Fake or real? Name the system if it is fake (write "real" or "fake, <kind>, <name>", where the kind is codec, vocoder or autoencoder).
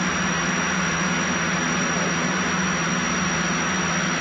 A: real